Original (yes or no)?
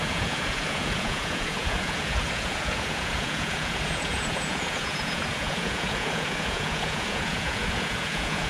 no